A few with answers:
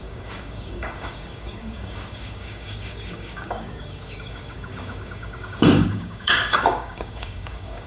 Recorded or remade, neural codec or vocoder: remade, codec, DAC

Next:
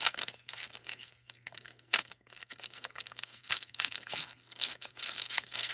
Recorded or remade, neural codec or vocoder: remade, codec, SNAC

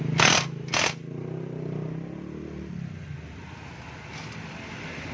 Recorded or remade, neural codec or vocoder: recorded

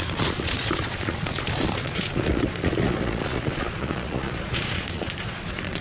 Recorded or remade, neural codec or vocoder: remade, vocoder, Vocos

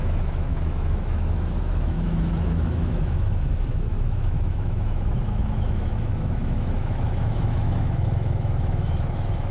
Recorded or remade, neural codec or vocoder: remade, autoencoder, DAC-VAE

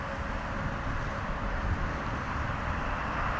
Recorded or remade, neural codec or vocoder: recorded